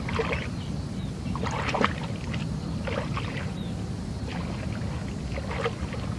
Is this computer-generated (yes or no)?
no